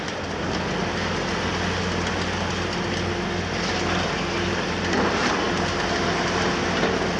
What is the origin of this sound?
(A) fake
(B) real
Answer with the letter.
B